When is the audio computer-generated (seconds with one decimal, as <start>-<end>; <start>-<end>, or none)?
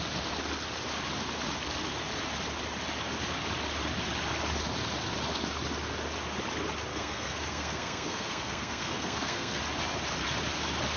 6.9-9.6